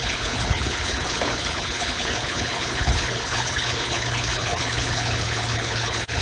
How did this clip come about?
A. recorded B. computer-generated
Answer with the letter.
B